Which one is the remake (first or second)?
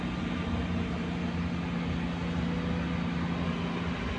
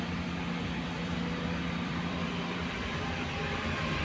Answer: second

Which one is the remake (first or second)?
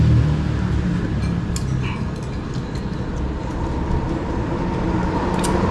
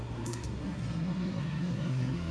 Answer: second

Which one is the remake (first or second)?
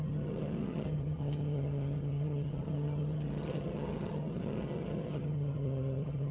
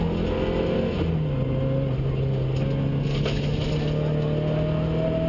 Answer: first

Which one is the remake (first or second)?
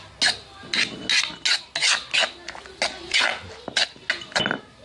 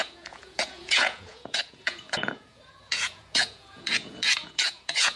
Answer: second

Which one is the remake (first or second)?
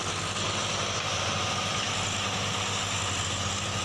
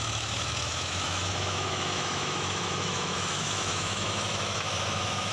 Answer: second